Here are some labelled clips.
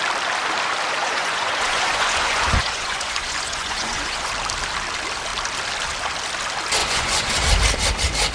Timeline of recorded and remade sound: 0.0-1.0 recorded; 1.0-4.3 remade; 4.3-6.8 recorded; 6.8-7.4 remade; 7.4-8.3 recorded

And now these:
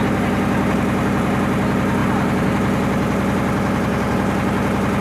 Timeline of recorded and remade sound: 0.0-5.0 recorded

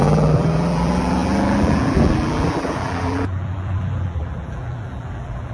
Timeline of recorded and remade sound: 0.0-5.5 remade

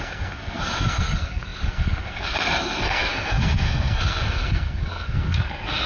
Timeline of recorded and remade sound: 0.0-5.9 remade

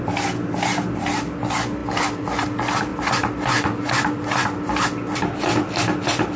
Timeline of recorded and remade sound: 0.0-6.4 recorded